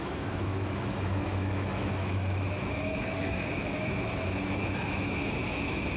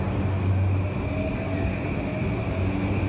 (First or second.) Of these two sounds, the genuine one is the second